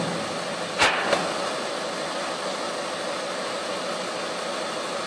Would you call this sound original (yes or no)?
yes